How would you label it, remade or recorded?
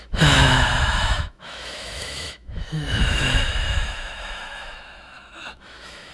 remade